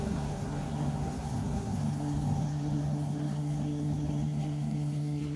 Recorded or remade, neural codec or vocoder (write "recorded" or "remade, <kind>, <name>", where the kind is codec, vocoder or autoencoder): remade, codec, SNAC